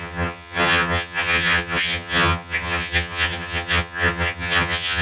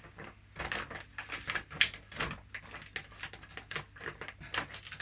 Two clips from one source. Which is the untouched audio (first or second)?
second